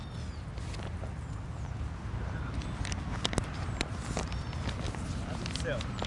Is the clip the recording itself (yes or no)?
yes